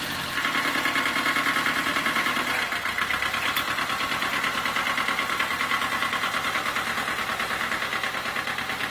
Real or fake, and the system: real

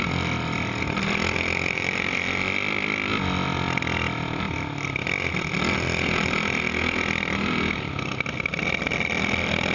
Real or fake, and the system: real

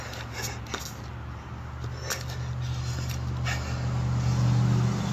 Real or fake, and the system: real